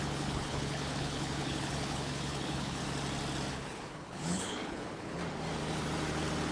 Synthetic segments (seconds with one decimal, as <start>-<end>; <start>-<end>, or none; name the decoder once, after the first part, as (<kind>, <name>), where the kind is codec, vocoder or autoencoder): 0.0-2.8 (codec, HILCodec); 3.5-5.2